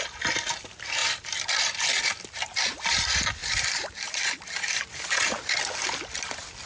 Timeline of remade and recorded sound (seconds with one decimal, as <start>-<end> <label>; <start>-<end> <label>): 0.0-1.0 recorded; 1.0-1.9 remade; 1.9-3.4 recorded; 3.4-4.8 remade; 4.8-6.7 recorded